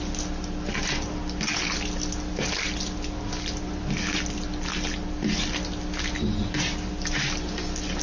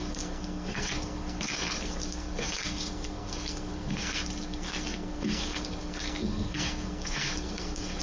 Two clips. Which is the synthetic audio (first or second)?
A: second